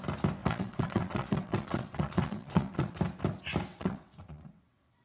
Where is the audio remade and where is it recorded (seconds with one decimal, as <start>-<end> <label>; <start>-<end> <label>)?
0.0-0.4 recorded; 0.4-3.0 remade; 3.0-3.7 recorded; 3.7-5.0 remade